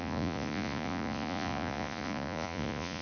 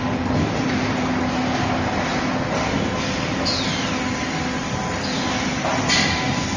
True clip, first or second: second